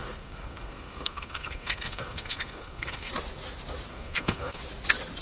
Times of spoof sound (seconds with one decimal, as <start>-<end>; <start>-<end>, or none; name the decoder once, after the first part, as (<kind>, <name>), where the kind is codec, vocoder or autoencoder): 0.0-3.1 (codec, SNAC); 3.9-4.6